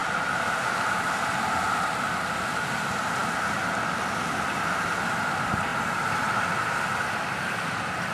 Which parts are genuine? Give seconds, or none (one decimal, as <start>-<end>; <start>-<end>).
0.0-8.1